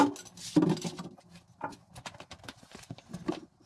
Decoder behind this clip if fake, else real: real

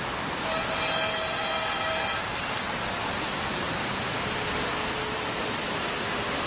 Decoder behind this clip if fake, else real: real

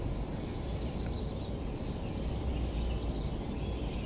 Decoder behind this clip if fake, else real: real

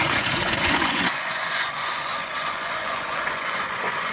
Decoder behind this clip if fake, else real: fake, vocoder, Vocos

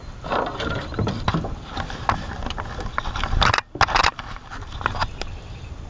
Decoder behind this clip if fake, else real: real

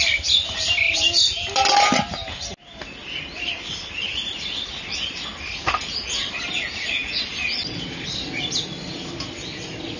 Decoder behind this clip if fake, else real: real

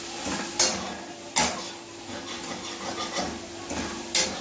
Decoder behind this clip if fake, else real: real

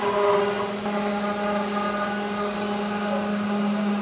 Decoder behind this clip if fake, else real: real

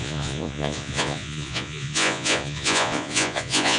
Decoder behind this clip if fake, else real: fake, vocoder, Vocos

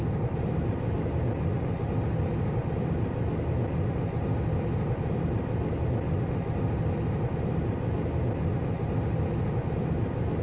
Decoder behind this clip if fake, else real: real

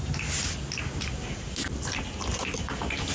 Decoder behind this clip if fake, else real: real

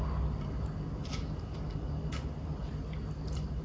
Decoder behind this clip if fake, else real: real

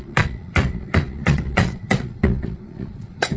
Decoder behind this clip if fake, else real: fake, vocoder, Vocos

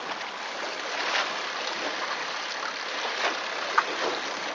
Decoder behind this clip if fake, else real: real